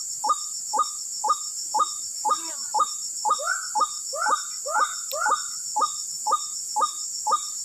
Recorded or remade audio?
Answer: remade